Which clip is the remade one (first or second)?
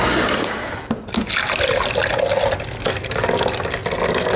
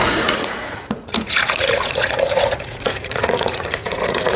second